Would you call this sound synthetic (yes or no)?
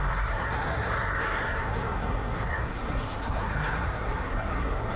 yes